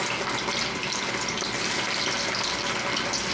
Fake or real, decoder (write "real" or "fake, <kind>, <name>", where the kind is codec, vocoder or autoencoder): real